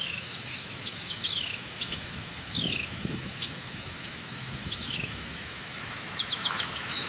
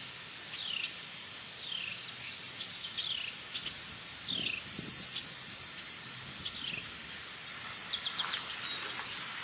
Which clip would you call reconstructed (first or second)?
first